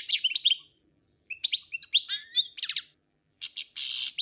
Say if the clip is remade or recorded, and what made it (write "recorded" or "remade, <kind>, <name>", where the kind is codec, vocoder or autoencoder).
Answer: recorded